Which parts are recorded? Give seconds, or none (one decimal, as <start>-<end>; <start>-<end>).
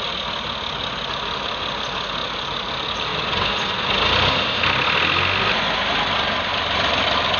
0.0-7.4